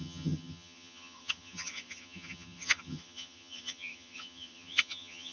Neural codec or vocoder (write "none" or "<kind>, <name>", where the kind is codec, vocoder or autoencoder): vocoder, HiFi-GAN